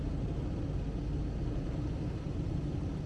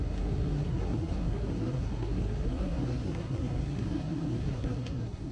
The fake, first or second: second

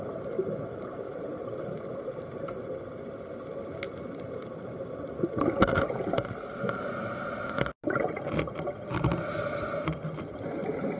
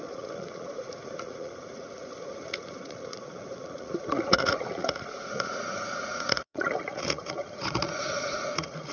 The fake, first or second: second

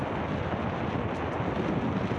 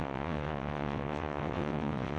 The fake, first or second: second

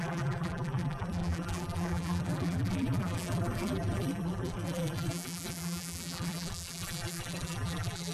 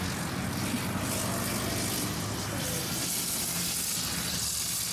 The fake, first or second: first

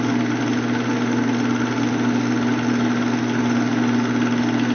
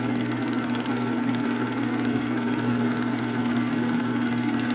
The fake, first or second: second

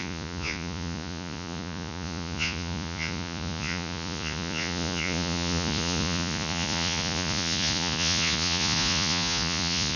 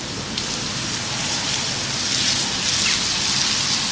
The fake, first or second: first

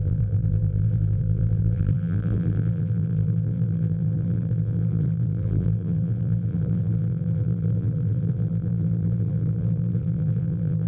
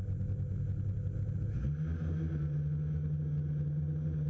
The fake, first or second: first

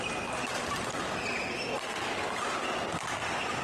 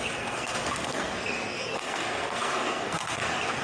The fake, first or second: second